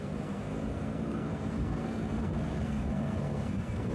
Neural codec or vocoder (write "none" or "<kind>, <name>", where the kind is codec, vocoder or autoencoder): codec, SNAC